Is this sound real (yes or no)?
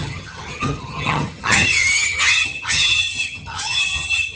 no